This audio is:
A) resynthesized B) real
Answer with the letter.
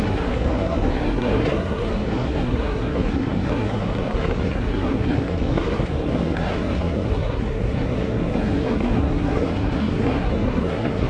A